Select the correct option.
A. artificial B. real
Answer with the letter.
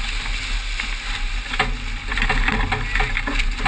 B